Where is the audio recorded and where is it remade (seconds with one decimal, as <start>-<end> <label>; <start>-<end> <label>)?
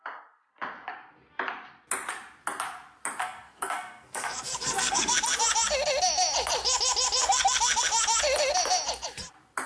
0.0-3.2 recorded; 3.2-5.1 remade; 5.1-9.7 recorded